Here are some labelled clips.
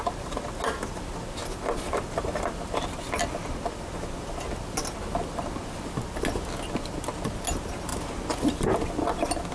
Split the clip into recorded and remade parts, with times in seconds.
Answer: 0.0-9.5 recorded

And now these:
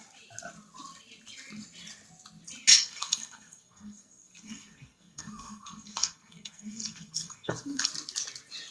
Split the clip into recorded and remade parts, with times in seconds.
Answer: 0.0-2.7 recorded; 2.7-7.9 remade; 7.9-8.7 recorded

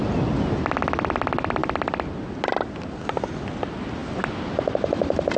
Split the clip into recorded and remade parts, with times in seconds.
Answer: 0.0-5.4 recorded

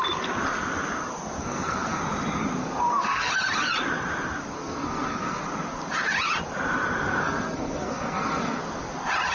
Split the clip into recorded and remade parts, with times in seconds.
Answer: 0.0-1.4 recorded; 1.4-2.0 remade; 2.0-2.6 recorded; 2.6-3.3 remade; 3.3-4.6 recorded; 4.6-5.4 remade; 5.4-7.2 recorded; 7.2-8.6 remade; 8.6-9.3 recorded

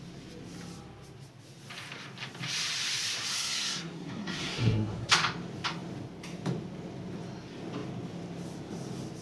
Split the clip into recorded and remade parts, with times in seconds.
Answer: 0.0-3.3 recorded; 3.3-5.1 remade; 5.1-9.2 recorded

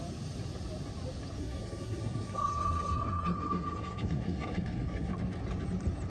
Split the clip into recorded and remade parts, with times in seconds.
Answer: 0.0-1.4 recorded; 1.4-5.1 remade; 5.1-6.1 recorded